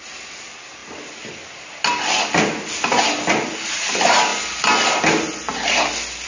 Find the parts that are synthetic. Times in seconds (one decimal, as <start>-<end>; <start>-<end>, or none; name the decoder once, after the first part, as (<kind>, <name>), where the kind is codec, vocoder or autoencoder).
none